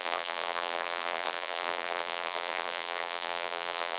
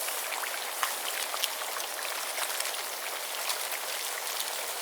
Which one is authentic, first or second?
second